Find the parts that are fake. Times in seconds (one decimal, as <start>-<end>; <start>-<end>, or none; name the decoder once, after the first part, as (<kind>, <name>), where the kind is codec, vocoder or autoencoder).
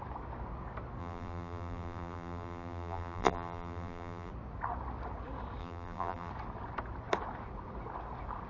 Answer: 1.0-4.3 (vocoder, BigVGAN v2); 5.6-6.3